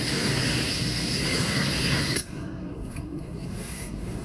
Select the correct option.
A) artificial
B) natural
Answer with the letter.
A